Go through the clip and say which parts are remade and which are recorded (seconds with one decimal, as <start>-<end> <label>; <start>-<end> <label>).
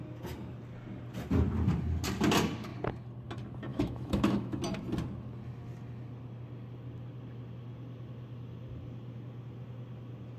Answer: 0.0-3.7 recorded; 3.7-4.6 remade; 4.6-10.4 recorded